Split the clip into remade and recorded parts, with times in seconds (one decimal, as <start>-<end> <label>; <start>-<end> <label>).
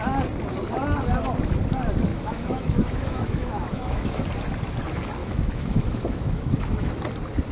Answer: 0.0-2.1 recorded; 2.1-4.2 remade; 4.2-5.2 recorded; 5.2-6.9 remade; 6.9-7.5 recorded